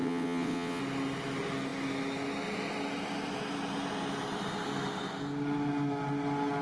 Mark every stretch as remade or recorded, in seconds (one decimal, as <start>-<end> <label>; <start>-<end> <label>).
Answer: 0.0-0.8 remade; 0.8-6.6 recorded